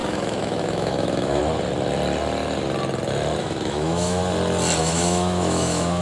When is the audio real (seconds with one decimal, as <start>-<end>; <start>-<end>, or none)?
1.4-3.4; 4.2-4.8